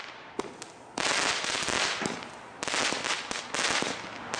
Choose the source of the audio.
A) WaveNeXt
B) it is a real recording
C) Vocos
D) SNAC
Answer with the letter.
B